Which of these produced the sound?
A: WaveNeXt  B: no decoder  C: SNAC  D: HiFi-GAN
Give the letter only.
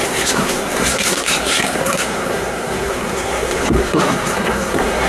C